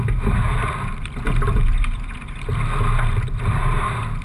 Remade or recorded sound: recorded